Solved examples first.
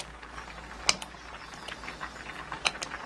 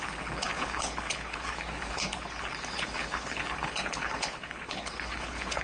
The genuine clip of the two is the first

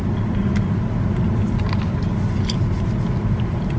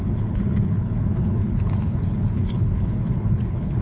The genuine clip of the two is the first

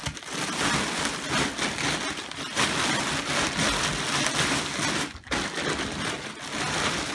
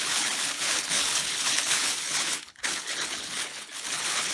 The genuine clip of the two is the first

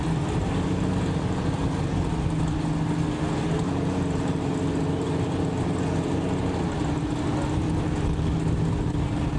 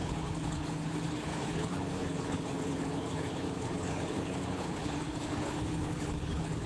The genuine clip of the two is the first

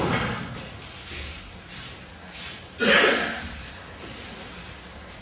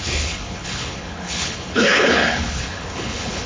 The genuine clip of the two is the first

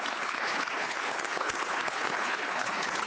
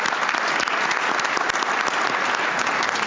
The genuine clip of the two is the second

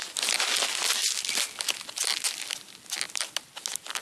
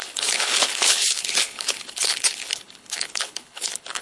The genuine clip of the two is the first